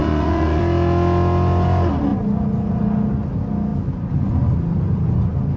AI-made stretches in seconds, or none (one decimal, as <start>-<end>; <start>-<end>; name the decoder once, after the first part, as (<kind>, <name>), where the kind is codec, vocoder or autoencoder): 0.0-0.6 (vocoder, Vocos)